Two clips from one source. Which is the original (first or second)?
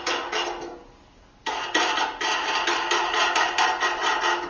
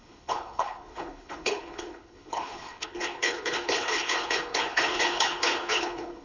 first